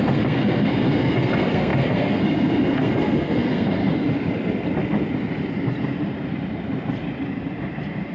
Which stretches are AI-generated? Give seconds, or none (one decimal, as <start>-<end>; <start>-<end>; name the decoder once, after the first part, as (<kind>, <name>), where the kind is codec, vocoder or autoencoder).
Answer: 0.0-3.8 (codec, SNAC)